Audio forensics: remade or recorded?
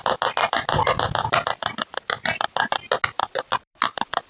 recorded